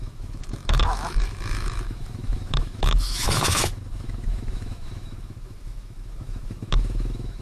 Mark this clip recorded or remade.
remade